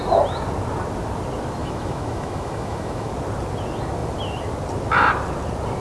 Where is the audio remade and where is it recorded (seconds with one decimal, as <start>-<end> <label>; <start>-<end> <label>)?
0.0-1.6 recorded; 1.6-3.1 remade; 3.1-5.8 recorded